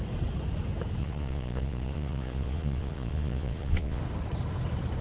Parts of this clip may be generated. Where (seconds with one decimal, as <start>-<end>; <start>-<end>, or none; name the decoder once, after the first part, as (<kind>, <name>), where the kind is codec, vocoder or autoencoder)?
1.0-4.0 (vocoder, Vocos)